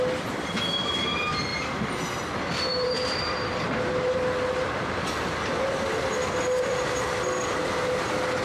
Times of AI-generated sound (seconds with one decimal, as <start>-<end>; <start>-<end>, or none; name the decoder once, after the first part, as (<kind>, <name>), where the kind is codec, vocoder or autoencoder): 1.5-3.8 (vocoder, BigVGAN v2)